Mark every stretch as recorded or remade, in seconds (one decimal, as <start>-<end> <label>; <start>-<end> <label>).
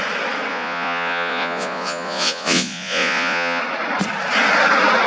0.0-0.5 recorded; 0.5-3.6 remade; 3.6-5.1 recorded